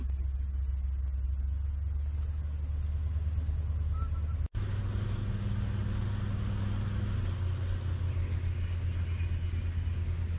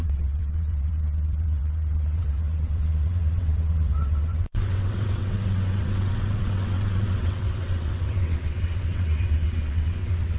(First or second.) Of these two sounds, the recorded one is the first